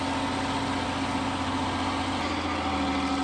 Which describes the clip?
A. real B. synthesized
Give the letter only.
A